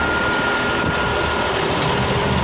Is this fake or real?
real